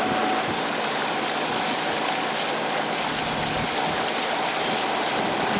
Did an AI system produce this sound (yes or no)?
no